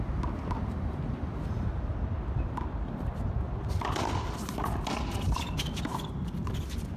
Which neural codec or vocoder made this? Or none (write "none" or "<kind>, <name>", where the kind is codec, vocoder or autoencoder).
none